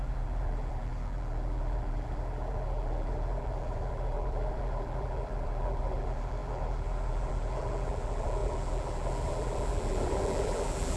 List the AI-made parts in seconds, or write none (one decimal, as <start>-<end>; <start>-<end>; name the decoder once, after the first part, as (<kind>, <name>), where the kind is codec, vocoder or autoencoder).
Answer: 0.0-11.0 (vocoder, BigVGAN v2)